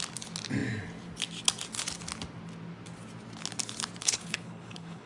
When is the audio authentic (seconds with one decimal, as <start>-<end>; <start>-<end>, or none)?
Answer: 0.0-4.0